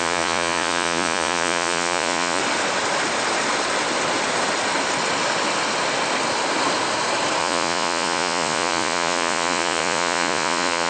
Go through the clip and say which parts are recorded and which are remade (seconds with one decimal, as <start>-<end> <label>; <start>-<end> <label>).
0.0-2.4 remade; 2.4-7.4 recorded; 7.4-10.9 remade